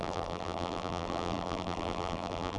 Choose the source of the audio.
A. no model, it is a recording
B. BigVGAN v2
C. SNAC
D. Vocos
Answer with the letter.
B